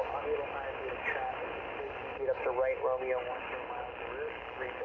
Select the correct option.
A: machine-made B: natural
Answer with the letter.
B